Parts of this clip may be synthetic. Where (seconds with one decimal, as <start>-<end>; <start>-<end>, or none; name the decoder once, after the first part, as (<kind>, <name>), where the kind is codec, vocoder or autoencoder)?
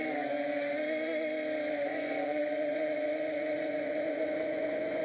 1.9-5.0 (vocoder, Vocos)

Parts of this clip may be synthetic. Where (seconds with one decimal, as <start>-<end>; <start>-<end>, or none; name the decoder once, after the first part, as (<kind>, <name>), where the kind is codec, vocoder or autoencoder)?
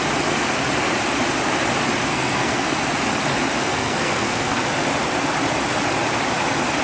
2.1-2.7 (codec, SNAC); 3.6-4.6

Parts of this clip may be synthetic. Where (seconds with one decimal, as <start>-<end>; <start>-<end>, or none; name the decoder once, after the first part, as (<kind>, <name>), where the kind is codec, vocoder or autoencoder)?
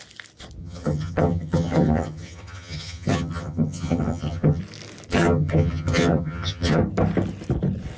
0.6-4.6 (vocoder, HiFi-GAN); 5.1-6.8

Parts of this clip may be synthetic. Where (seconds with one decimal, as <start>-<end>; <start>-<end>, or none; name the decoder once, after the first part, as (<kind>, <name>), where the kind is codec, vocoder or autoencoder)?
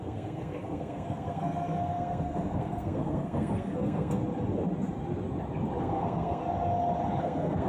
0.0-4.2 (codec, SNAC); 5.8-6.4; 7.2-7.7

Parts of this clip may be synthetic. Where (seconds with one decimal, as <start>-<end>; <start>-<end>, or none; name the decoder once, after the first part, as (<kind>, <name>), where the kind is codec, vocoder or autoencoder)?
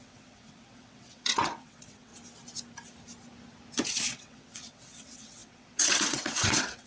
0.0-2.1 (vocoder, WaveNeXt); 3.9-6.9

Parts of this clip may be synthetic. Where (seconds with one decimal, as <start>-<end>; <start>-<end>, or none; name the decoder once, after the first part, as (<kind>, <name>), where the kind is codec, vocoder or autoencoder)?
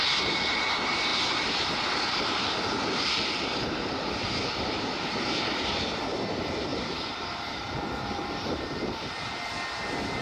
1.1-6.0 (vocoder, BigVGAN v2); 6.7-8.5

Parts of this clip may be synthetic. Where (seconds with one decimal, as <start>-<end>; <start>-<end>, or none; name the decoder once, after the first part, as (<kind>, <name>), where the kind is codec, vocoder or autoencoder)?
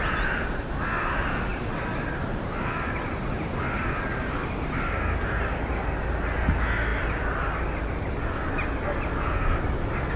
none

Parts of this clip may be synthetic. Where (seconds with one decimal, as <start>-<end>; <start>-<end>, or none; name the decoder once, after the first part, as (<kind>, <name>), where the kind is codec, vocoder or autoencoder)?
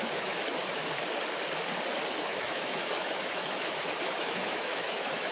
0.0-0.8 (autoencoder, DAC-VAE); 2.1-5.3